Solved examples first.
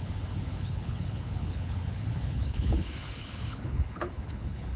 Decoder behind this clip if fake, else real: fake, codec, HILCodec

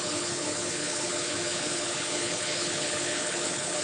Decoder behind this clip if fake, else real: fake, codec, HILCodec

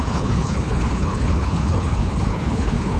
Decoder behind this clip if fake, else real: fake, codec, HILCodec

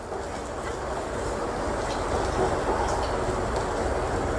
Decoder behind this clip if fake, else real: real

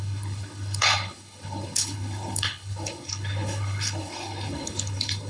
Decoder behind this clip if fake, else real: fake, codec, HILCodec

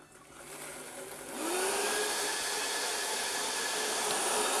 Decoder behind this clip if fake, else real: real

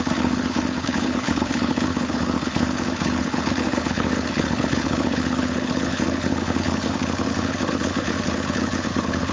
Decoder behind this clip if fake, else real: fake, codec, HILCodec